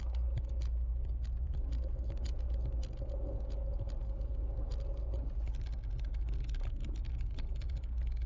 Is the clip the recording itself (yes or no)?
yes